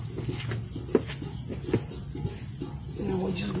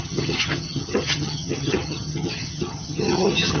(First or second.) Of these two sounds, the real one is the first